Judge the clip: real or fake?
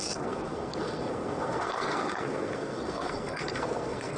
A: fake